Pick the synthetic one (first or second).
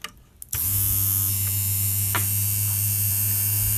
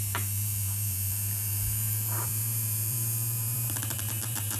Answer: second